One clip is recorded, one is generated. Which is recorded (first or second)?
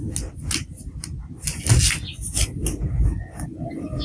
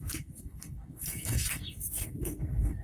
first